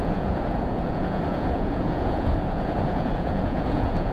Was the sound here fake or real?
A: fake